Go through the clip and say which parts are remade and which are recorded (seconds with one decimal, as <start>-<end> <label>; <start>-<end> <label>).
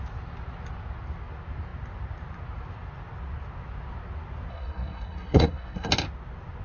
0.0-4.5 recorded; 4.5-5.9 remade; 5.9-6.6 recorded